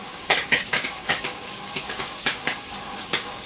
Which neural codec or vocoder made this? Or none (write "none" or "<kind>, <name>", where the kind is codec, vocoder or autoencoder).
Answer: codec, DAC